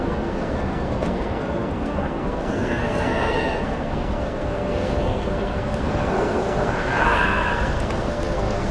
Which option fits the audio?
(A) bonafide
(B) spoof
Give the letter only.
B